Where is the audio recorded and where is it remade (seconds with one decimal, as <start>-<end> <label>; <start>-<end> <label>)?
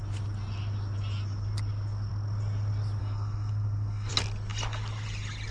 0.0-3.0 recorded; 3.0-4.1 remade; 4.1-5.5 recorded